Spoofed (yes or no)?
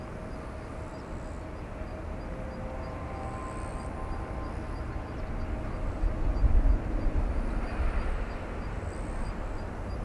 no